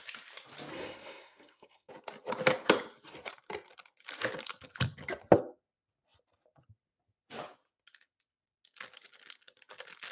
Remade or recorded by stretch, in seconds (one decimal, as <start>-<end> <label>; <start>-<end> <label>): 0.0-0.7 recorded; 0.7-1.9 remade; 1.9-10.1 recorded